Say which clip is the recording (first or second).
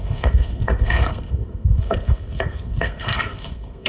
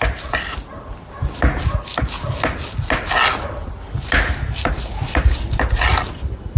second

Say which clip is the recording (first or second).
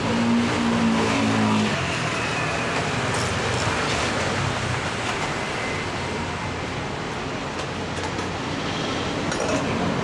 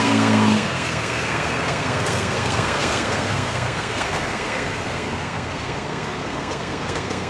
first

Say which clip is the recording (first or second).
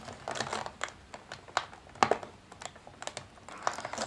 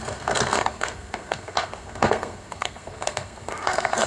first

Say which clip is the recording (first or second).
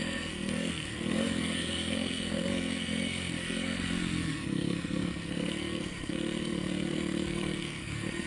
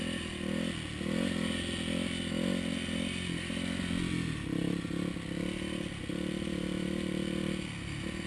second